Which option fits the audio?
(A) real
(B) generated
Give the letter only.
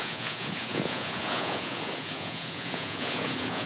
B